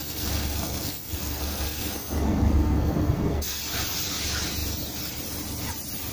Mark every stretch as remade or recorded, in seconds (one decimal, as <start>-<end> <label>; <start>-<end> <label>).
0.0-3.6 remade; 3.6-6.1 recorded

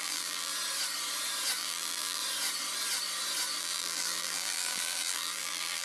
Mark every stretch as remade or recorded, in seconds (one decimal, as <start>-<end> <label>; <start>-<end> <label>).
0.0-0.5 remade; 0.5-1.6 recorded; 1.6-2.2 remade; 2.2-3.6 recorded; 3.6-5.8 remade

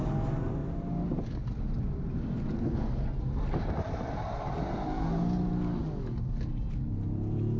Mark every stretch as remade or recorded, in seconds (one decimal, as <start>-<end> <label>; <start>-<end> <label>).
0.0-7.6 recorded